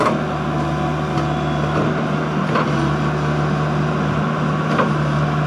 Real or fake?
real